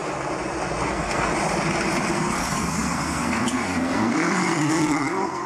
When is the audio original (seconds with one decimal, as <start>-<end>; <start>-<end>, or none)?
0.0-0.9; 1.3-2.1